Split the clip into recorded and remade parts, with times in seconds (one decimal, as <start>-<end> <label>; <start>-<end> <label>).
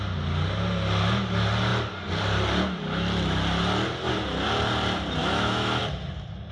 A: 0.0-5.2 recorded; 5.2-5.8 remade; 5.8-6.5 recorded